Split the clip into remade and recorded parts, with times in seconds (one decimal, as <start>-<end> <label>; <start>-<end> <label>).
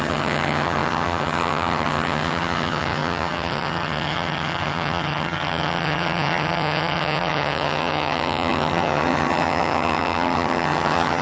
0.0-11.2 remade